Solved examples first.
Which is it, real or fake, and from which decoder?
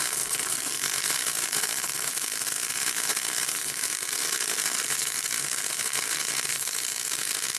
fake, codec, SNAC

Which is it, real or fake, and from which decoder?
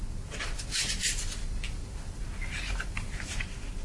real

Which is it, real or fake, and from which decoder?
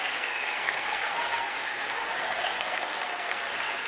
fake, codec, SNAC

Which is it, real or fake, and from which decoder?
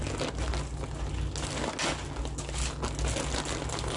real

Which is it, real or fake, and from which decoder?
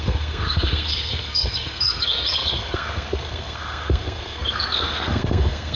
fake, codec, SNAC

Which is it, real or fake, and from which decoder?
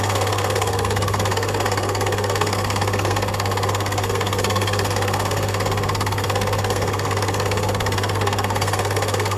fake, codec, SNAC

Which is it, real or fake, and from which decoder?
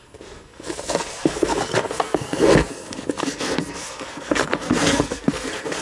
fake, codec, SNAC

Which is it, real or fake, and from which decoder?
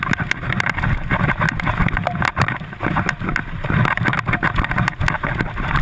real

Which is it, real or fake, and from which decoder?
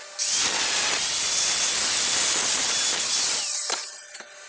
real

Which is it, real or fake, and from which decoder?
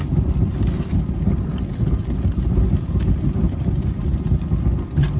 real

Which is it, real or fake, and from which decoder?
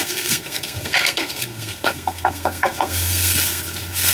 fake, codec, SNAC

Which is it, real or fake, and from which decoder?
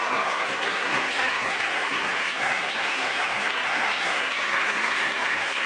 fake, codec, SNAC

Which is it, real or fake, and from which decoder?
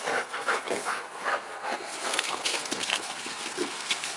fake, codec, SNAC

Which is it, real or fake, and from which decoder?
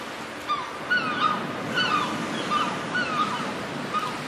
real